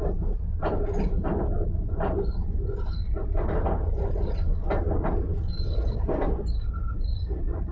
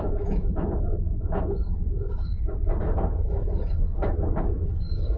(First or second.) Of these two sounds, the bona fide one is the first